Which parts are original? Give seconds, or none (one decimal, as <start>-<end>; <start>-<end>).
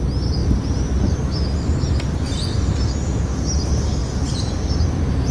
0.0-4.0; 4.5-5.3